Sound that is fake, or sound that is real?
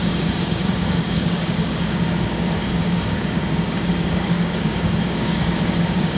fake